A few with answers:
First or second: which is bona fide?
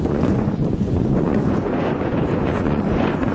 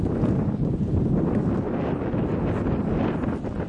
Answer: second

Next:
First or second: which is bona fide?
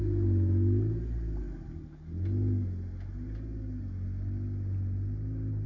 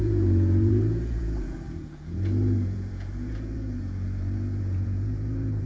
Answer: first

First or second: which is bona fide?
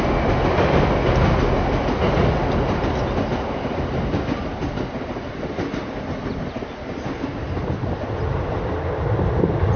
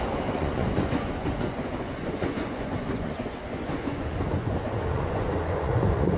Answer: first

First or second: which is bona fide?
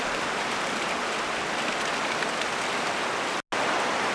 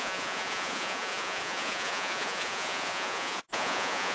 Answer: first